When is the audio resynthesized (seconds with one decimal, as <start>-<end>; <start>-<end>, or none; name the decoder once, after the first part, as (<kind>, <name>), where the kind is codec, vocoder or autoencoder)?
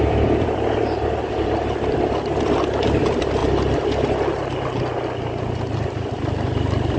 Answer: 0.0-3.4 (vocoder, BigVGAN v2); 5.5-7.0